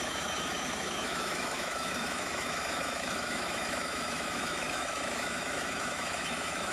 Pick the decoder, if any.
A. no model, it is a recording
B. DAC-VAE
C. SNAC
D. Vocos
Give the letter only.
B